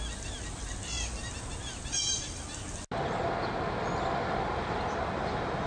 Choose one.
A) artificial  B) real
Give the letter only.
B